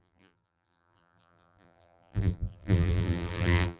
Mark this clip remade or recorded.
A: remade